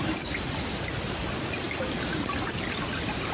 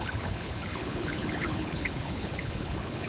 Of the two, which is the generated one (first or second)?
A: second